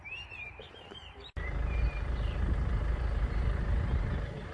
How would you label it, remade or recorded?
remade